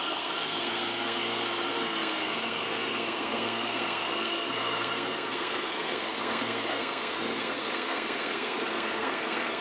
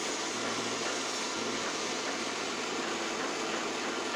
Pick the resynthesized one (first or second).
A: first